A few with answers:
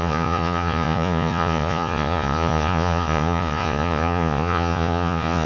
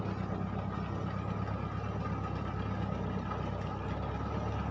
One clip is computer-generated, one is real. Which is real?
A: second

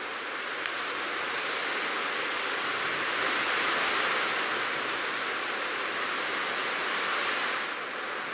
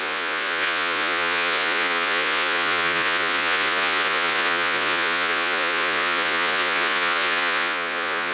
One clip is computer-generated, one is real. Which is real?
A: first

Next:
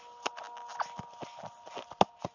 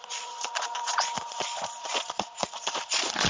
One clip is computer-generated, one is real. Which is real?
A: first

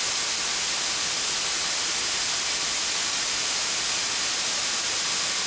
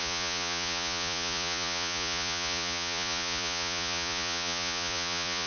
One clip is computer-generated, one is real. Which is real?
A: first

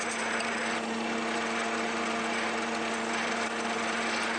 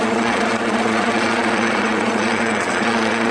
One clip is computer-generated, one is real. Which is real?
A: first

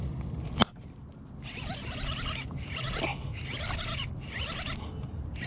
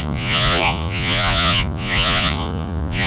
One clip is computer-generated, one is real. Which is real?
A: first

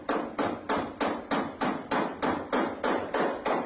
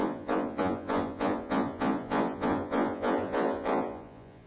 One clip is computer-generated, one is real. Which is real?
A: first